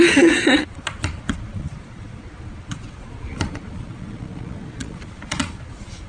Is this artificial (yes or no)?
yes